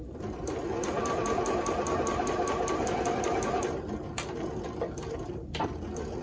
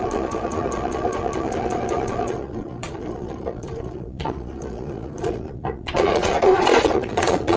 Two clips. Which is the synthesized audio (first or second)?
second